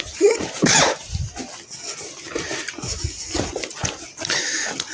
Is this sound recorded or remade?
recorded